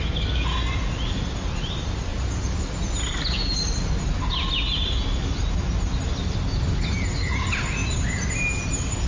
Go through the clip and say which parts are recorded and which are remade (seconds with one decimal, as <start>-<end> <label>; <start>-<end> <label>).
0.0-2.1 recorded; 2.1-2.9 remade; 2.9-9.1 recorded